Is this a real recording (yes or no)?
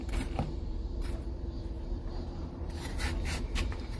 no